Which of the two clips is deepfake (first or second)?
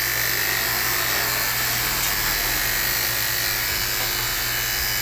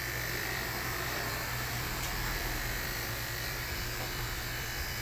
second